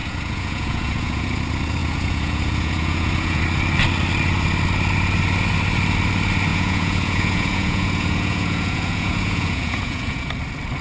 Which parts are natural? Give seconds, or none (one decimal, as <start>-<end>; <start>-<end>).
1.4-1.8; 3.4-6.5; 10.3-10.8